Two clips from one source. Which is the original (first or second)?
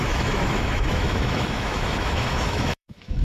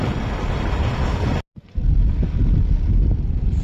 second